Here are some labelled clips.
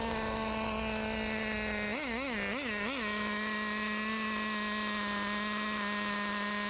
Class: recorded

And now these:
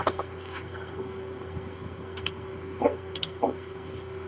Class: remade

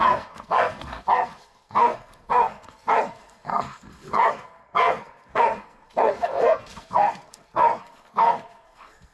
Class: remade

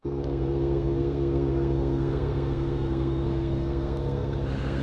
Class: remade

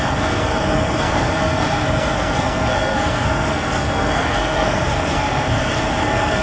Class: remade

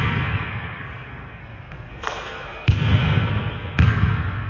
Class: remade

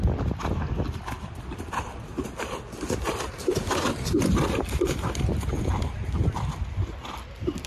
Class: recorded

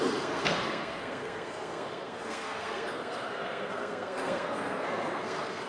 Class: remade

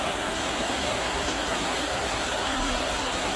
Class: remade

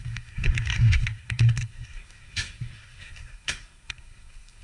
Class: remade